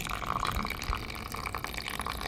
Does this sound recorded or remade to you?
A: recorded